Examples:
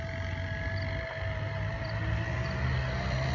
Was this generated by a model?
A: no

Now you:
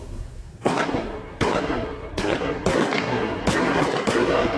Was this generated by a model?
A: yes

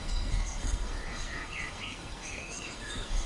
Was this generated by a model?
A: yes